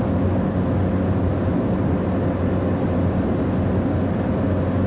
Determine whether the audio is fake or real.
real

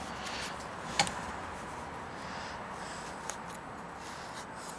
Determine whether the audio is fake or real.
real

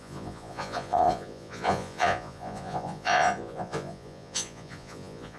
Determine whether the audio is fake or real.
fake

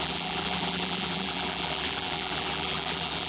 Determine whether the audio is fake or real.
fake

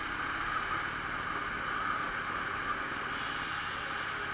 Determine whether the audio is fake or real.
real